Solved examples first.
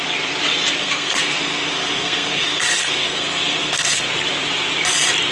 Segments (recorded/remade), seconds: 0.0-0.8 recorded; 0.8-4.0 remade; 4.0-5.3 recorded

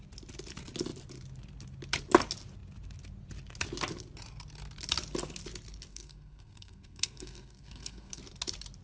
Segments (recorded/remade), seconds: 0.0-5.9 recorded; 5.9-8.2 remade; 8.2-8.8 recorded

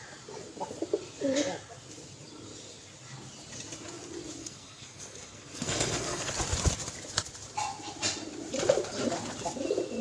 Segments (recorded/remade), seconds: 0.0-4.4 recorded; 4.4-6.3 remade; 6.3-10.0 recorded